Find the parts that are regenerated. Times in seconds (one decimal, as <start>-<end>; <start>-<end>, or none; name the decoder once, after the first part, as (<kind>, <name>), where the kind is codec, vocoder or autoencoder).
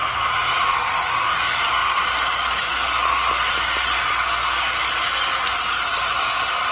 0.0-1.3 (vocoder, Vocos)